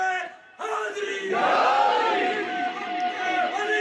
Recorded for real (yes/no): no